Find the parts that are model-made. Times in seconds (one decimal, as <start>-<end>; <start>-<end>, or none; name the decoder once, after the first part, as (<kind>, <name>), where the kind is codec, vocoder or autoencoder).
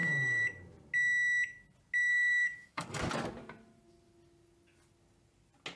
0.0-0.5 (codec, DAC); 2.1-3.0